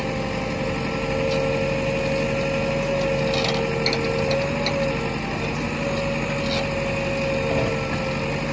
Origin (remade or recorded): recorded